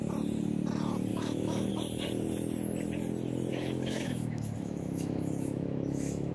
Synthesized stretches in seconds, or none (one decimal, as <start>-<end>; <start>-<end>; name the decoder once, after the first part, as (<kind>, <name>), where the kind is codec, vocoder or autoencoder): 1.1-1.7 (autoencoder, DAC-VAE); 3.5-6.3